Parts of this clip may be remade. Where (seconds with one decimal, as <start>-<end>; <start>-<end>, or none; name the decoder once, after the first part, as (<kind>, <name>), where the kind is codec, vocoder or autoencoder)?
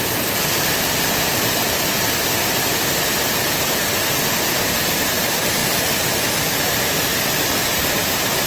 none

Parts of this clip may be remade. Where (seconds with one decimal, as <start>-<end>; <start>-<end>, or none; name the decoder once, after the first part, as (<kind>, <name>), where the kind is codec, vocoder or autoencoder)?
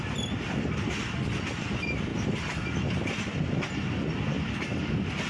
none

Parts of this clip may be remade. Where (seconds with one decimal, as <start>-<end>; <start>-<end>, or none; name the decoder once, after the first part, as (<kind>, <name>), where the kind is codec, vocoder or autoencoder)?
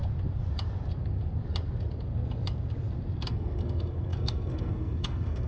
3.3-5.5 (codec, SNAC)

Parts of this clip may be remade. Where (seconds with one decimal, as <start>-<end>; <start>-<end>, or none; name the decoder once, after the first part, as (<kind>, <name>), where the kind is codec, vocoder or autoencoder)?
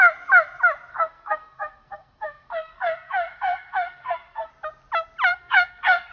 0.9-4.5 (codec, SNAC); 5.3-6.1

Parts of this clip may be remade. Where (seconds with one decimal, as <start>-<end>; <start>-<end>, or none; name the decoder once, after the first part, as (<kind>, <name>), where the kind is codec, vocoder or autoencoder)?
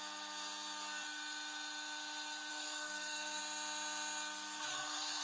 2.5-3.4 (codec, SNAC); 4.7-5.2